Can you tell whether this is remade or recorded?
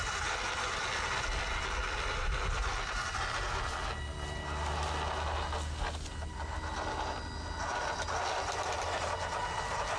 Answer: recorded